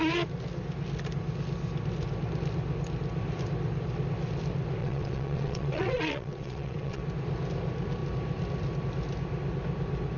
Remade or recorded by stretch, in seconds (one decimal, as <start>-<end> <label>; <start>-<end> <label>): 0.0-4.8 recorded; 4.8-7.0 remade; 7.0-10.2 recorded